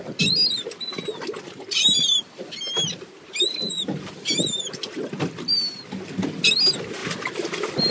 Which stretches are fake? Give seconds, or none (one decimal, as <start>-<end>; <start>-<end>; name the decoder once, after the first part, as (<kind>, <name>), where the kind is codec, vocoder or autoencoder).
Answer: none